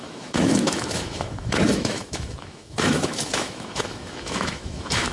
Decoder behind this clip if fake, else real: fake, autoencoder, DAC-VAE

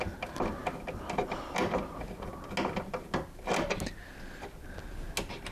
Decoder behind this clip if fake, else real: real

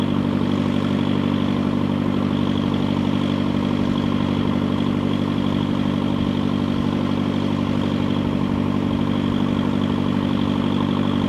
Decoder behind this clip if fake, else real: real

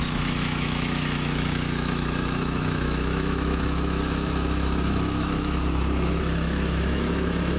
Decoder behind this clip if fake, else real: fake, autoencoder, DAC-VAE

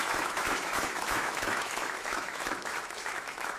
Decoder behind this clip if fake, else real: fake, autoencoder, DAC-VAE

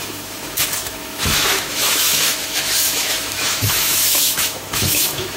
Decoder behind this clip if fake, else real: fake, autoencoder, DAC-VAE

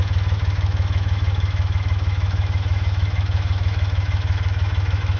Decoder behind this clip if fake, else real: fake, autoencoder, DAC-VAE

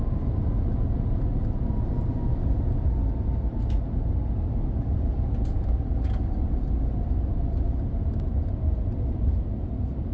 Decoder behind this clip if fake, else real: real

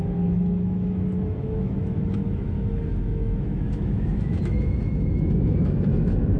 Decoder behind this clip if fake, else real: fake, autoencoder, DAC-VAE